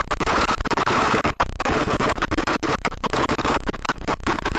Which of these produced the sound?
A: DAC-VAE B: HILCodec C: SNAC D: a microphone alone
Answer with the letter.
B